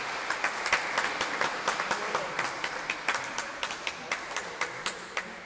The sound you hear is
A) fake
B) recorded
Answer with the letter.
B